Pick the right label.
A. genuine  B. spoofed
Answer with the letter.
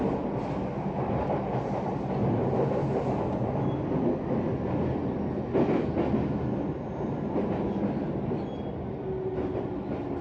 A